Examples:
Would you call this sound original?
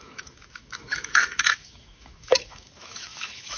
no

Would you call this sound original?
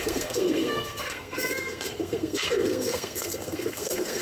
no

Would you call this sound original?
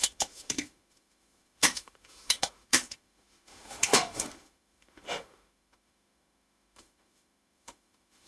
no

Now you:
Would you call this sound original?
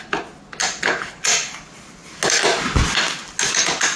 yes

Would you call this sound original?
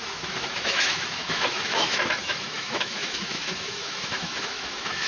no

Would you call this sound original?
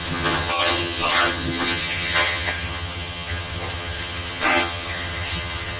no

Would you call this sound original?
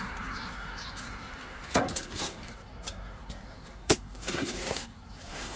no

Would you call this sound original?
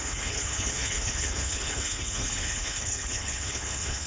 no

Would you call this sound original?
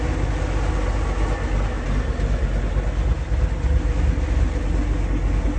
yes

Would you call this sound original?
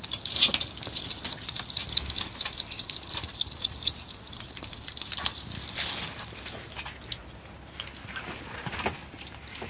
yes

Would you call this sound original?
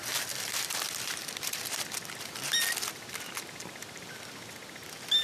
yes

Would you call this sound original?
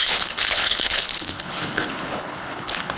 no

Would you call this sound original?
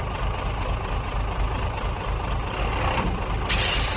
yes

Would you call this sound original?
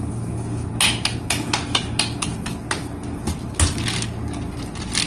yes